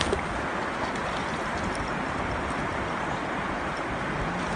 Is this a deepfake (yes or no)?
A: no